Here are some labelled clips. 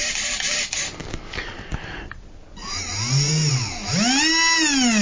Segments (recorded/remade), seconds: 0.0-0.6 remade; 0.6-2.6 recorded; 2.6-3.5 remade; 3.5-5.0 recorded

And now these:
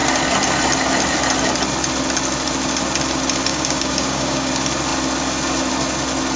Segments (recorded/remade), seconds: 0.0-3.5 recorded; 3.5-4.5 remade; 4.5-6.4 recorded

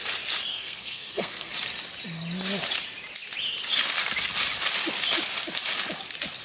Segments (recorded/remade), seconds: 0.0-0.5 recorded; 0.5-1.5 remade; 1.5-6.4 recorded

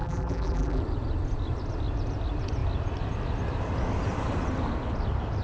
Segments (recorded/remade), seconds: 0.0-0.8 remade; 0.8-5.4 recorded

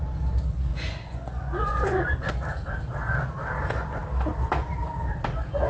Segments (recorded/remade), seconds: 0.0-0.7 recorded; 0.7-2.3 remade; 2.3-5.7 recorded

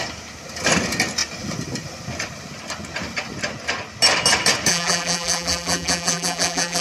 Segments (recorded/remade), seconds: 0.0-4.7 recorded; 4.7-6.8 remade